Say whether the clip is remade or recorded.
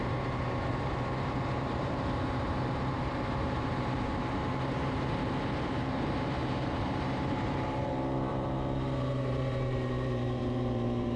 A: remade